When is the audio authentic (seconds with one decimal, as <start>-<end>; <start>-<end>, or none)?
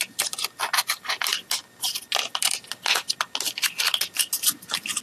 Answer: 0.0-5.0